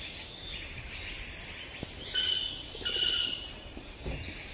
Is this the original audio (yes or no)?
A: yes